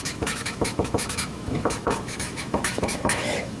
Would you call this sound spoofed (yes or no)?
yes